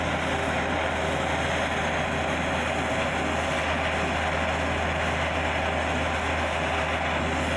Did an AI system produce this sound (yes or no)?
no